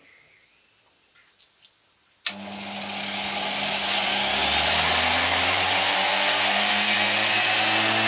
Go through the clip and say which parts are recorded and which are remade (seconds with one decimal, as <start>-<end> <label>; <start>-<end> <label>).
0.0-4.4 recorded; 4.4-7.6 remade; 7.6-8.1 recorded